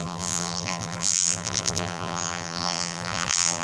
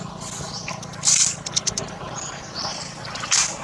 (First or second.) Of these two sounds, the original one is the second